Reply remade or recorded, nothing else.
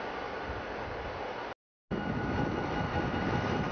recorded